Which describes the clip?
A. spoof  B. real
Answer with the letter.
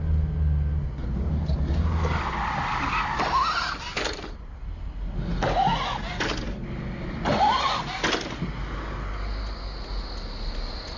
B